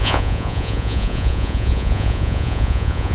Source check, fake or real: fake